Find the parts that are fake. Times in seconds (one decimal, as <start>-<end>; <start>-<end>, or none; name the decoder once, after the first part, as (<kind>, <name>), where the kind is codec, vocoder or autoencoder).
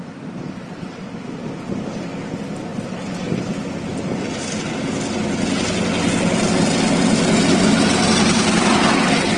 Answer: none